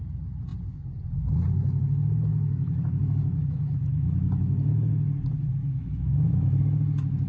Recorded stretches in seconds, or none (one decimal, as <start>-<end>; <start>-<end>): 0.0-2.3; 4.7-5.6; 6.6-7.3